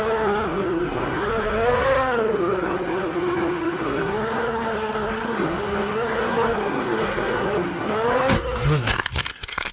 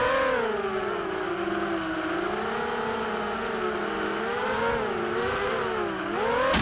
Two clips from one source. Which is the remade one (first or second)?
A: first